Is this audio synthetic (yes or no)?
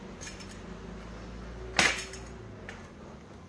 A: no